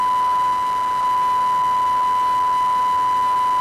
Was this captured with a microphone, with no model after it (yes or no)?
yes